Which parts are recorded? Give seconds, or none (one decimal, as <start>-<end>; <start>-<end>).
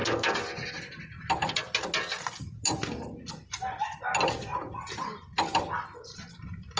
0.0-6.8